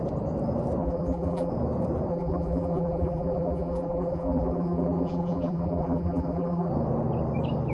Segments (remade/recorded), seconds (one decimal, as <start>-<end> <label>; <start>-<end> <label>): 0.0-0.8 recorded; 0.8-1.5 remade; 1.5-2.1 recorded; 2.1-6.7 remade; 6.7-7.7 recorded